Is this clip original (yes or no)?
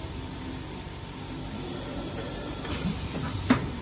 yes